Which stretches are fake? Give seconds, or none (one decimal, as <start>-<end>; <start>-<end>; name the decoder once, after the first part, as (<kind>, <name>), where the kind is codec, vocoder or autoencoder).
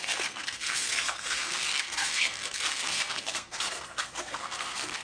0.0-5.0 (codec, SNAC)